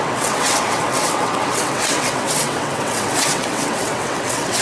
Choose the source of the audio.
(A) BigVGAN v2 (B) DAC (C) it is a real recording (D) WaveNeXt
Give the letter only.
D